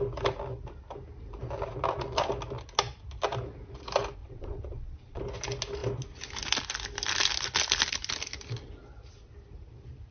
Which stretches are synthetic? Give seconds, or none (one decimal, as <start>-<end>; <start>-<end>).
4.2-5.2